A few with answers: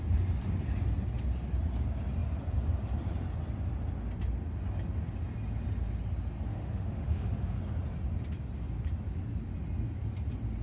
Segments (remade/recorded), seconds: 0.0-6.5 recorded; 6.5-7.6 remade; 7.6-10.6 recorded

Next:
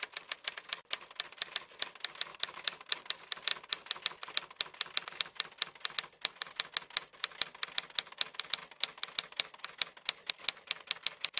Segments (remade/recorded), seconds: 0.0-2.3 recorded; 2.3-3.1 remade; 3.1-11.4 recorded

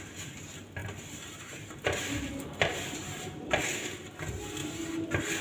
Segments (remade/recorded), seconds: 0.0-0.8 recorded; 0.8-3.2 remade; 3.2-5.4 recorded